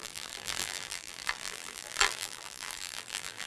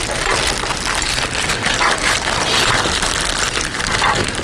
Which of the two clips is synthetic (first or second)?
first